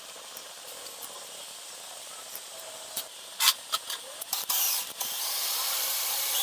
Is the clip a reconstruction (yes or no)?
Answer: yes